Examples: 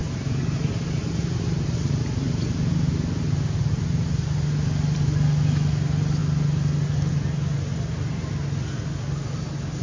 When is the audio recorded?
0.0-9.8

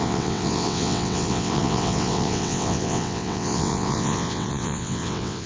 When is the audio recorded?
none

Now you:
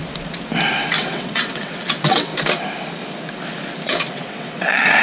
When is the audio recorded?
0.0-1.0; 2.3-4.1

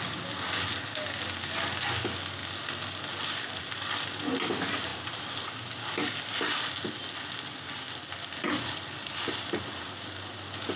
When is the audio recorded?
0.0-10.8

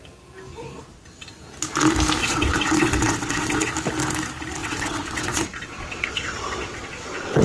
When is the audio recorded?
0.0-2.2; 3.7-4.6

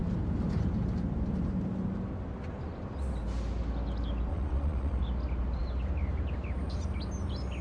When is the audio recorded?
0.0-4.3; 5.0-7.6